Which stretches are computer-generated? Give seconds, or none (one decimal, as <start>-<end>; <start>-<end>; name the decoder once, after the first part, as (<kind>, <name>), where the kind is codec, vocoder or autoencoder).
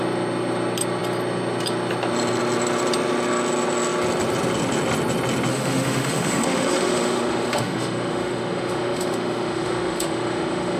5.5-10.8 (autoencoder, DAC-VAE)